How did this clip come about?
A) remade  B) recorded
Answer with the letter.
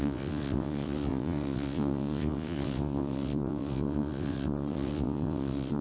A